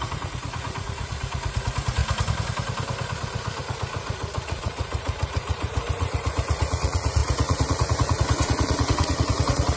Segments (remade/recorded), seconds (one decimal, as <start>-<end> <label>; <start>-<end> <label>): 0.0-2.0 remade; 2.0-3.6 recorded; 3.6-9.8 remade

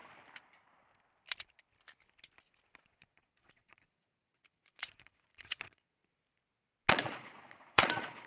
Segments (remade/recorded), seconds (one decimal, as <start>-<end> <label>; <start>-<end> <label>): 0.0-2.8 recorded; 2.8-6.0 remade; 6.0-6.9 recorded; 6.9-8.3 remade

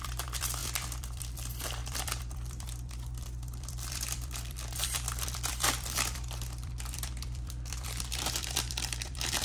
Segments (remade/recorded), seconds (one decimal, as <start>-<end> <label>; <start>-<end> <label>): 0.0-9.4 remade

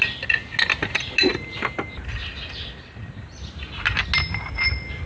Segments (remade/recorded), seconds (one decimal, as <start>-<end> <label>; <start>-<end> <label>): 0.0-5.1 recorded

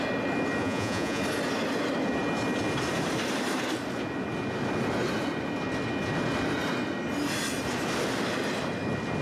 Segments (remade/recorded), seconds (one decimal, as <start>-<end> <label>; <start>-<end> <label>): 0.0-0.6 recorded; 0.6-1.2 remade; 1.2-9.2 recorded

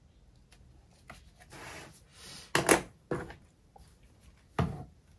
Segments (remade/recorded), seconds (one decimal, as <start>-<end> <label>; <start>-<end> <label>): 0.0-5.2 recorded